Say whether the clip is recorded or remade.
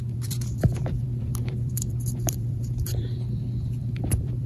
remade